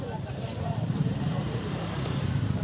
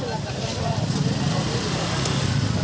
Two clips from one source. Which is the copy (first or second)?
first